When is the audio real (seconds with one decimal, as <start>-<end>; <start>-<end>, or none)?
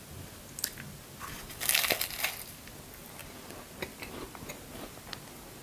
0.0-5.6